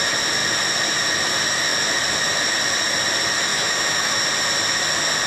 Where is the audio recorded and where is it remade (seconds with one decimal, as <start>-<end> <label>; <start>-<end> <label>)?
0.0-3.5 recorded; 3.5-4.2 remade; 4.2-5.3 recorded